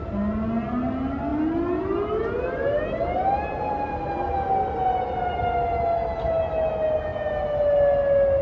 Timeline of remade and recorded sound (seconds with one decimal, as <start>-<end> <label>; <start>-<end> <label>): 0.0-8.4 recorded